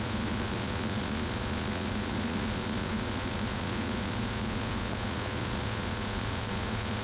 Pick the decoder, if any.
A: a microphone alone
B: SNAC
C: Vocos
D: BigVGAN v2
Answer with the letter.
C